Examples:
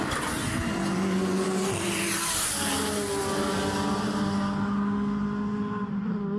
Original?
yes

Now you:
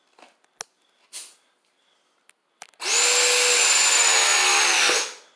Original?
yes